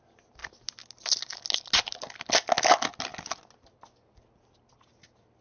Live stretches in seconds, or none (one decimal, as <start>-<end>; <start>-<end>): 0.0-5.4